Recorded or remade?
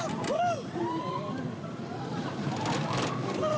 remade